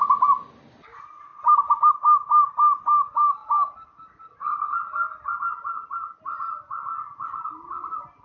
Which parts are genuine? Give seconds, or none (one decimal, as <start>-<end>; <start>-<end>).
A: 0.0-8.2